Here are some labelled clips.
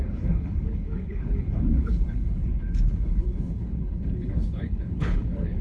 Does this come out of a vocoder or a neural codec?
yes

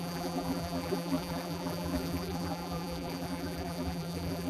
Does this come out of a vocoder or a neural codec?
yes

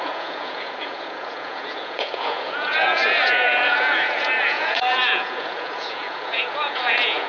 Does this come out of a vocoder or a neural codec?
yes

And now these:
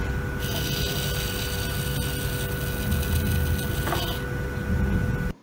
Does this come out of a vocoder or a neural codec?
no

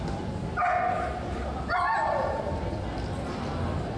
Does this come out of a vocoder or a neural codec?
no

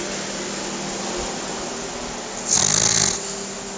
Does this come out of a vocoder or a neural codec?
no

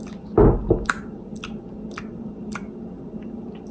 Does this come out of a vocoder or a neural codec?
no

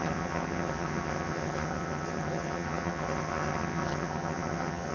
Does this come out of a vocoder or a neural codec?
yes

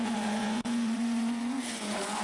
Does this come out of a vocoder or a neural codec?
yes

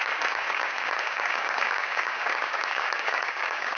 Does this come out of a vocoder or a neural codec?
yes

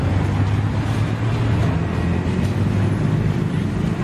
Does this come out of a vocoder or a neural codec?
no